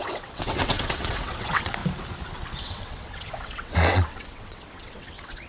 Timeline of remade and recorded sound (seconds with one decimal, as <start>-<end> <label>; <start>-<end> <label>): 0.0-1.8 remade; 1.8-2.6 recorded; 2.6-5.5 remade